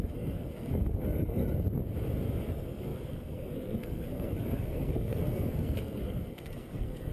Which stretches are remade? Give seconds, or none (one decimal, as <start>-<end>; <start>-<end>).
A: 0.0-1.4; 2.4-7.1